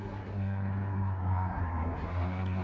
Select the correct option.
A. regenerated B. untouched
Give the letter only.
A